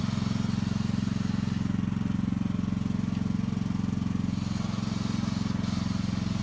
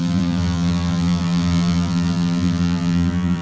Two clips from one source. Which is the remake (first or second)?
second